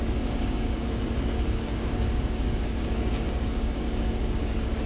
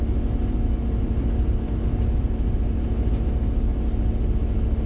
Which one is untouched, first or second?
second